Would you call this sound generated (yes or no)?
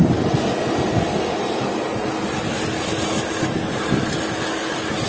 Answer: no